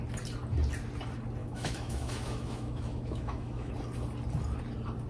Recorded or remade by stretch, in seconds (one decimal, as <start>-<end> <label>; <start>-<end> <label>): 0.0-1.4 recorded; 1.4-3.7 remade; 3.7-5.1 recorded